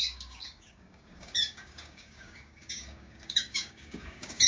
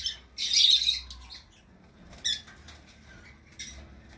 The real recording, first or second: second